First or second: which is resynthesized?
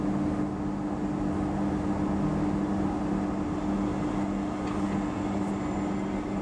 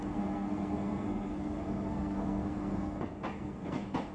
second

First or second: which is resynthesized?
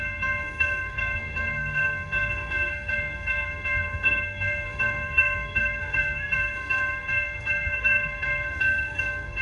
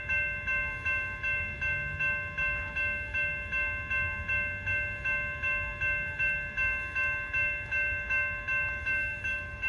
first